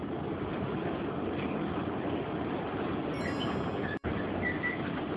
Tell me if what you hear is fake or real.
real